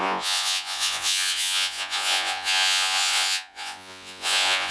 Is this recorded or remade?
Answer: remade